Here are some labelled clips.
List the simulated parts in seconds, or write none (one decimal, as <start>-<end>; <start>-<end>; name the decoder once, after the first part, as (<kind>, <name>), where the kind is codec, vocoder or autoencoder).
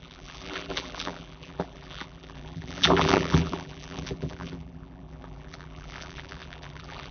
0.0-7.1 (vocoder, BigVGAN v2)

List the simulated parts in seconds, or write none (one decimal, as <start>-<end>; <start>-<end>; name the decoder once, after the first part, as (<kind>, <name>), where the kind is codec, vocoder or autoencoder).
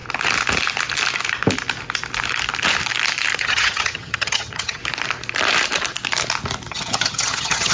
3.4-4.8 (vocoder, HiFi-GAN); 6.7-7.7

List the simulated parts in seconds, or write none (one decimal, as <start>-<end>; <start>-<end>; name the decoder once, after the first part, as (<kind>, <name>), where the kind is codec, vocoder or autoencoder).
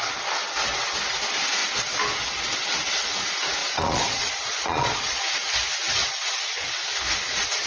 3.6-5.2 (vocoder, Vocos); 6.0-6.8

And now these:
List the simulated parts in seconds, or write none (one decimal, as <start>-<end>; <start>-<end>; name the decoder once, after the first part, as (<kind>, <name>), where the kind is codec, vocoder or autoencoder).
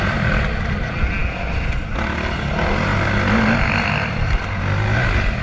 none